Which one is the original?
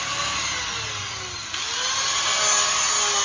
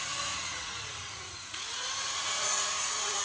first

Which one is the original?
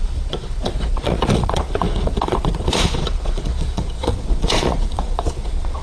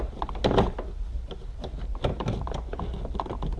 second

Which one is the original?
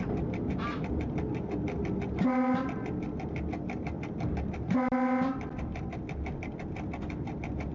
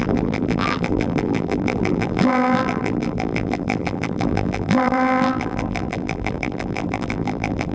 first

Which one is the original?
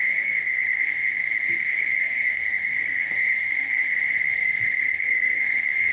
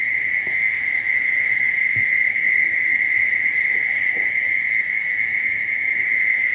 second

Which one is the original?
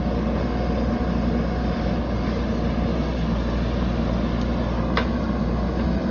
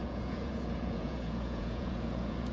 first